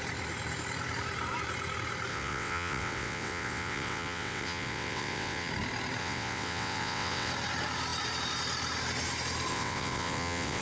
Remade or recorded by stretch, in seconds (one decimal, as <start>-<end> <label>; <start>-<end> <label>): 0.0-2.1 recorded; 2.1-5.5 remade; 5.5-6.0 recorded; 6.0-7.3 remade; 7.3-9.5 recorded; 9.5-10.6 remade